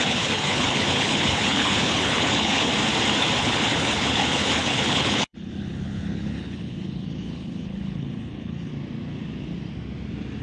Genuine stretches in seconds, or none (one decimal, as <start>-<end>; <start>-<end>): 2.7-3.4; 8.7-10.4